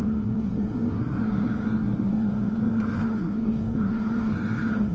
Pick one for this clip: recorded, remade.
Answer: remade